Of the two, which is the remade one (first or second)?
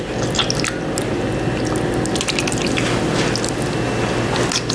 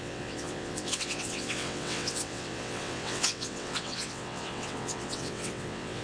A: second